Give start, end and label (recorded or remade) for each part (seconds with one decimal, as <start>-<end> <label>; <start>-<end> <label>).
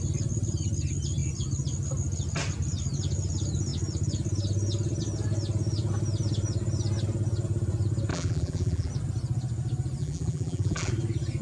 0.0-8.1 recorded; 8.1-8.9 remade; 8.9-10.0 recorded; 10.0-10.9 remade; 10.9-11.4 recorded